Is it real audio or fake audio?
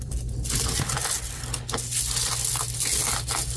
real